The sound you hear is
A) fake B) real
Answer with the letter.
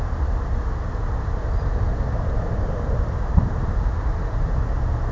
B